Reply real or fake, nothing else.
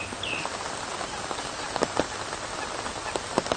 real